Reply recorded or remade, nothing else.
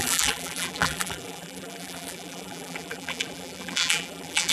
remade